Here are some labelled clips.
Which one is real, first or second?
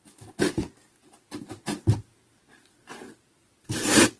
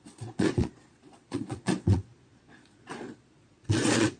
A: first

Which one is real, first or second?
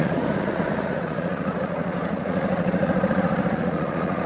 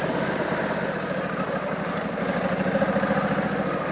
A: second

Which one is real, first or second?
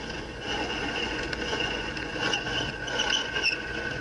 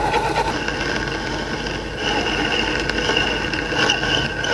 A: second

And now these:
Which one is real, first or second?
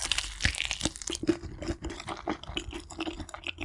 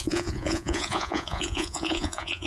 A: first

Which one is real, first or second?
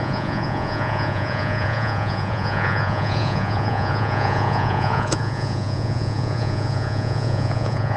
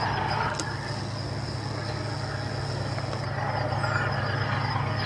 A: second